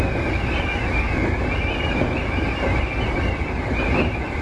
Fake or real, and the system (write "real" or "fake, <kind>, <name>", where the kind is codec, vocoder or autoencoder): real